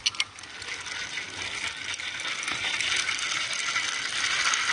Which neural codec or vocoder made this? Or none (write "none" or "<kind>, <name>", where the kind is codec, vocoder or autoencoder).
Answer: none